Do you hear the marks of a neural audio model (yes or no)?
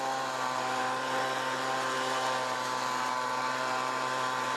no